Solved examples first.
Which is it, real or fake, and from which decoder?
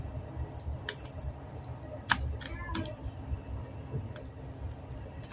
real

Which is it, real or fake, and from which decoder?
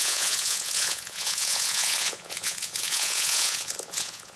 fake, vocoder, Vocos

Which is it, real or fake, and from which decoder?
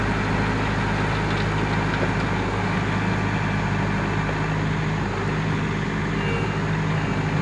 real